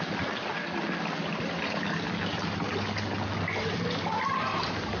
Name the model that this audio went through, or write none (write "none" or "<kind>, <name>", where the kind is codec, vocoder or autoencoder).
none